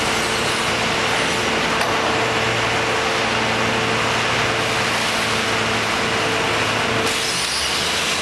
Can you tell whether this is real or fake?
real